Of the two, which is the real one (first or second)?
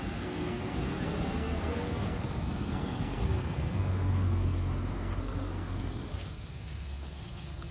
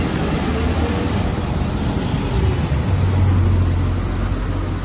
second